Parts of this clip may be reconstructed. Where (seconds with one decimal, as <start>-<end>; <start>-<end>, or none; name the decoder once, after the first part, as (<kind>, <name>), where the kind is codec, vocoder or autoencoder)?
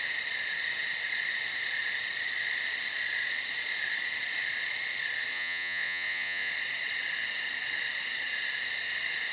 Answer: 5.3-6.5 (vocoder, Vocos)